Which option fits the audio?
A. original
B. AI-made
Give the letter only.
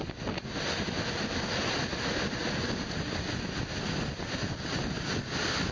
A